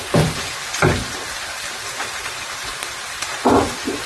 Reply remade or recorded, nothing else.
recorded